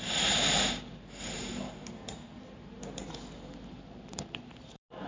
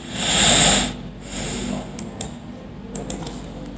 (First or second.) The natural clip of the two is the second